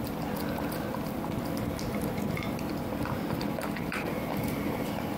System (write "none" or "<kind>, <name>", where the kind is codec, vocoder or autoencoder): none